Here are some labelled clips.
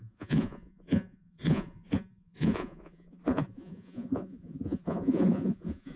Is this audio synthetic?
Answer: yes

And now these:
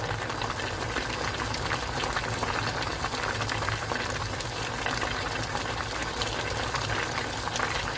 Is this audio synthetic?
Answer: no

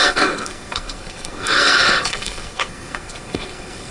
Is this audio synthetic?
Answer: yes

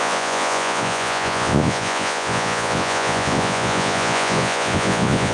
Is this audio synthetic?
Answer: yes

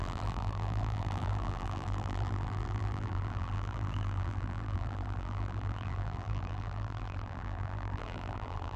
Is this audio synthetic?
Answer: yes